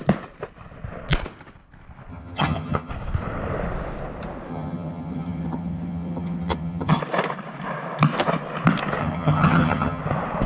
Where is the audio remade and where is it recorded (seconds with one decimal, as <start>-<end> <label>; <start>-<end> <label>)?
0.0-2.1 recorded; 2.1-2.9 remade; 2.9-4.5 recorded; 4.5-7.0 remade; 7.0-9.0 recorded; 9.0-10.0 remade; 10.0-10.5 recorded